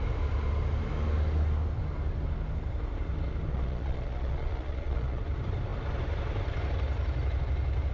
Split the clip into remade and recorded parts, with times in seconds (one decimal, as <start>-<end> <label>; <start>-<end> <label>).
0.0-3.5 recorded; 3.5-5.2 remade; 5.2-7.9 recorded